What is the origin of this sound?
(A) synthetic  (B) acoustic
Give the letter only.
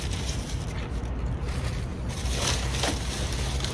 B